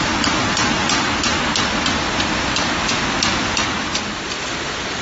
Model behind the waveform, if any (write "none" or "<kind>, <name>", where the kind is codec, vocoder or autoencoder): none